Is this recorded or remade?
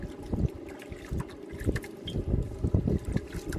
recorded